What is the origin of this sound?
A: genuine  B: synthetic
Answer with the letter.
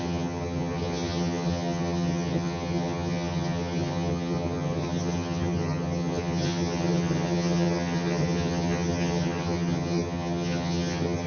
B